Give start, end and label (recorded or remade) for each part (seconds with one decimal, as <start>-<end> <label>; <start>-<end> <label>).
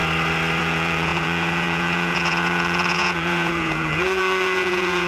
0.0-0.6 recorded; 0.6-5.1 remade